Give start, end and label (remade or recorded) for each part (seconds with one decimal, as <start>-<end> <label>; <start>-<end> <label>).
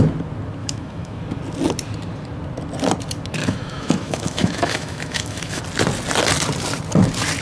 0.0-0.6 recorded; 0.6-1.2 remade; 1.2-3.4 recorded; 3.4-5.6 remade; 5.6-7.4 recorded